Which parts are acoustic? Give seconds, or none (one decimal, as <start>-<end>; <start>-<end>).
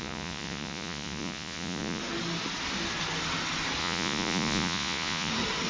2.0-3.8; 5.3-5.7